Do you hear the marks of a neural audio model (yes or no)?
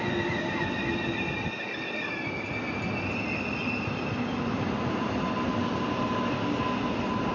no